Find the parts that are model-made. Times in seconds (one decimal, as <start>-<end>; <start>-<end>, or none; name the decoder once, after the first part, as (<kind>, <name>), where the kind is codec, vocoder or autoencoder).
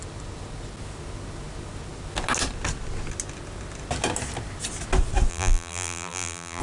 5.3-6.6 (vocoder, BigVGAN v2)